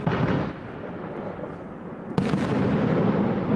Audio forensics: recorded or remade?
recorded